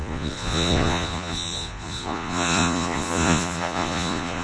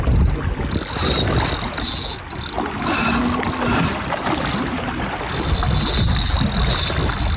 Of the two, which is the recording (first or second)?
second